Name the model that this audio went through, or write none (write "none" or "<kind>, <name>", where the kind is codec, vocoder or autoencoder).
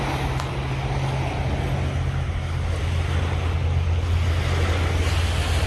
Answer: none